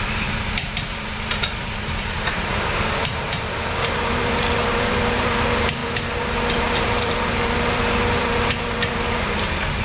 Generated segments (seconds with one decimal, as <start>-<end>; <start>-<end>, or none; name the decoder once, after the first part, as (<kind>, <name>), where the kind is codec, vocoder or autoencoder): 0.0-9.8 (vocoder, BigVGAN v2)